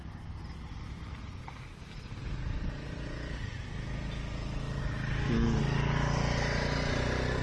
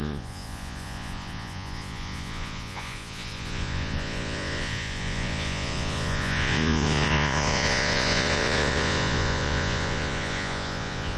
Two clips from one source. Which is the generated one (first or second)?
second